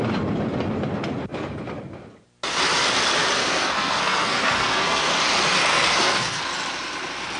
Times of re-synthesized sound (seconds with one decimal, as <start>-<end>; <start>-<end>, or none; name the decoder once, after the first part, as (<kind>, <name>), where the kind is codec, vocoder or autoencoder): 3.4-5.1 (codec, SNAC); 5.7-6.4